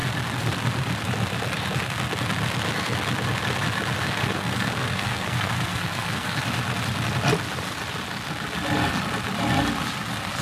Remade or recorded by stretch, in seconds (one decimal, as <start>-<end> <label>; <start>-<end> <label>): 0.0-4.2 recorded; 4.2-6.4 remade; 6.4-10.4 recorded